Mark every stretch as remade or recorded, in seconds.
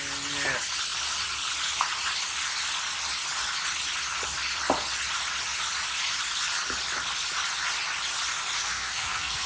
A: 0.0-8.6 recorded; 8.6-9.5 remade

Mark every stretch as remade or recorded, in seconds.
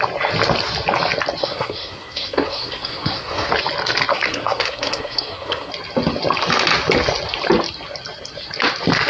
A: 0.0-1.4 recorded; 1.4-3.5 remade; 3.5-4.1 recorded; 4.1-5.7 remade; 5.7-9.1 recorded